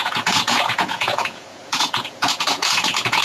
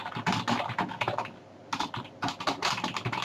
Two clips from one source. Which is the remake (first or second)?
first